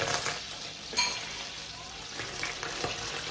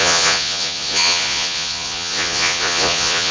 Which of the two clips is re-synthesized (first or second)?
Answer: second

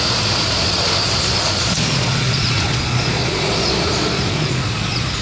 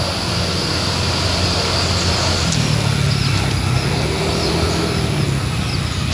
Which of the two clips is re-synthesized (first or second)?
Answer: first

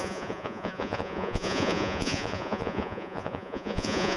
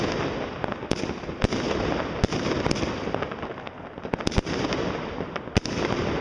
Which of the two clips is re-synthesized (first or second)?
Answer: first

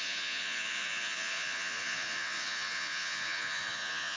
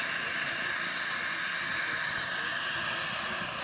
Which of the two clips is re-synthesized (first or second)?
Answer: first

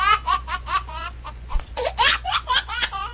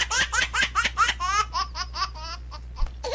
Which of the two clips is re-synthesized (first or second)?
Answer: first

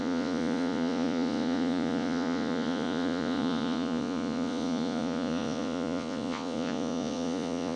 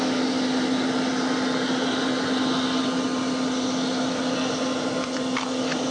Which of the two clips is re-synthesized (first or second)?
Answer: first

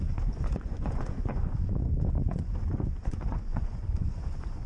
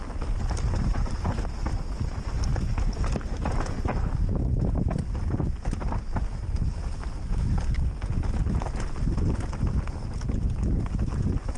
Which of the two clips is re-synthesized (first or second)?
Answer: first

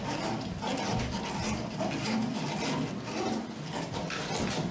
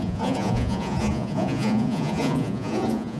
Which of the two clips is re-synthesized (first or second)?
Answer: second